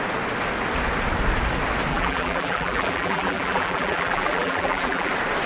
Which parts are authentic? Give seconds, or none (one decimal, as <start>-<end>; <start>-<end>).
0.0-1.9; 5.1-5.5